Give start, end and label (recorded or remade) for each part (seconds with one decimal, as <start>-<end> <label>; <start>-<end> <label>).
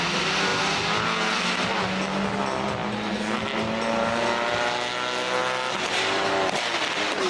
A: 0.0-7.3 recorded